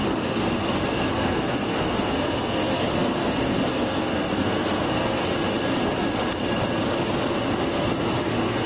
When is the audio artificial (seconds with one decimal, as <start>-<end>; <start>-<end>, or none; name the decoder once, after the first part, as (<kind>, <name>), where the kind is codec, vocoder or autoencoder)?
1.1-5.2 (codec, SNAC); 7.6-8.7